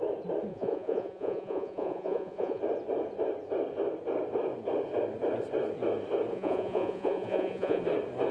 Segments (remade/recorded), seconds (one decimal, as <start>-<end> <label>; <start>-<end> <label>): 0.0-0.5 recorded; 0.5-2.6 remade; 2.6-6.3 recorded; 6.3-7.8 remade; 7.8-8.3 recorded